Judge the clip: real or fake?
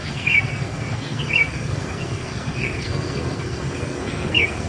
fake